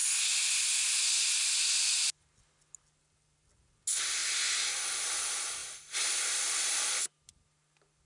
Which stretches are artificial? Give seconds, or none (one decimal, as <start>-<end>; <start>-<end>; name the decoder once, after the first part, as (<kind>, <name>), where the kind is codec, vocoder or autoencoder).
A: none